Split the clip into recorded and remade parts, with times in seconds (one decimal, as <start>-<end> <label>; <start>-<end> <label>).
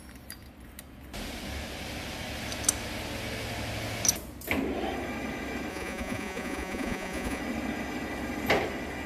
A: 0.0-5.7 recorded; 5.7-7.4 remade; 7.4-9.1 recorded